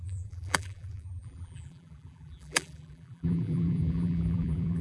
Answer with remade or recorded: remade